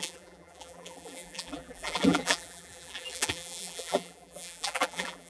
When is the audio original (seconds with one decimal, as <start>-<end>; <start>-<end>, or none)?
none